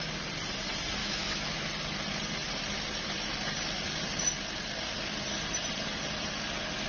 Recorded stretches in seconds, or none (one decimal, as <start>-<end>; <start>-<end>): 0.0-1.0; 1.7-6.9

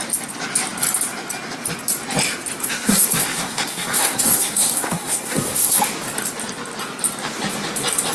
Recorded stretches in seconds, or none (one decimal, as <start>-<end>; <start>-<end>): 0.0-2.6; 5.8-8.1

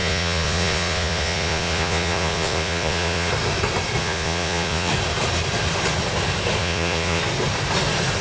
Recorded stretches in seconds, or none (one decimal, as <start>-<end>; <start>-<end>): 3.3-4.0; 4.9-6.6; 7.2-8.2

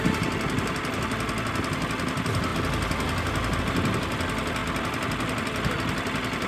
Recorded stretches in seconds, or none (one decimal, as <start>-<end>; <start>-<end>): 0.0-6.5

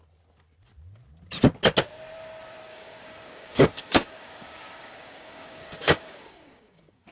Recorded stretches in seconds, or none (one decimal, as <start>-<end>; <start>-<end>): 0.0-2.7

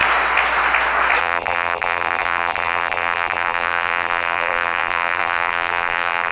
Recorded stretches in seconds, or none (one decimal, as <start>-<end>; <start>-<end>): 0.0-1.2

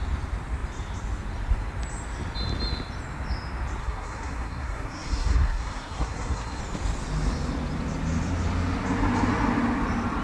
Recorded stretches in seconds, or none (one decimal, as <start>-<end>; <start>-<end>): 0.0-3.8; 6.6-10.2

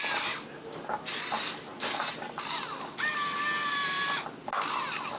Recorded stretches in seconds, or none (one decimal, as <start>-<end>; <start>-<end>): 0.0-5.2